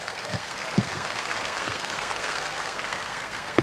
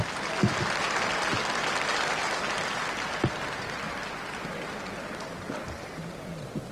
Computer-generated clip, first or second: first